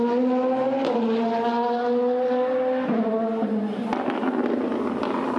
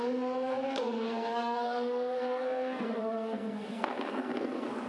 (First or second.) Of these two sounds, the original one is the first